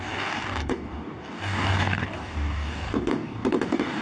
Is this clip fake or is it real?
fake